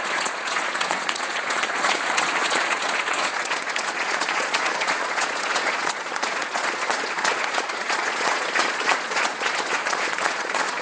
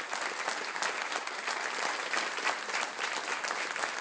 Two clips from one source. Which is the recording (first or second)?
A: second